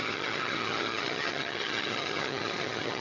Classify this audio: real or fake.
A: fake